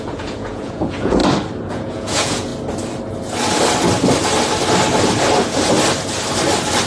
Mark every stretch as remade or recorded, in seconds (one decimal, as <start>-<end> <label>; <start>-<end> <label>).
0.0-1.2 remade; 1.2-1.7 recorded; 1.7-2.5 remade; 2.5-6.9 recorded